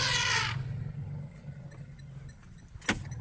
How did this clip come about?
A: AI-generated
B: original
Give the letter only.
B